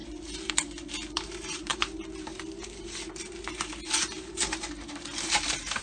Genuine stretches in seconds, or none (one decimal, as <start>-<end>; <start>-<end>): none